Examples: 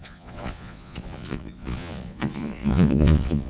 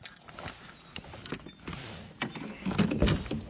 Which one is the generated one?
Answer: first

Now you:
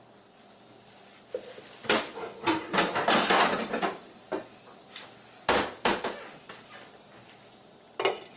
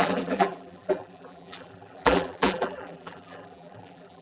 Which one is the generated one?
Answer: second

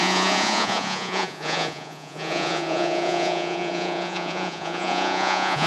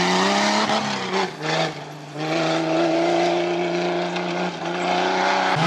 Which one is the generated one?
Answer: first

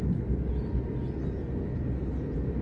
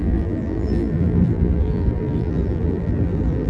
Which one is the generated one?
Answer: second